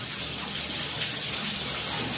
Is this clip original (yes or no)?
yes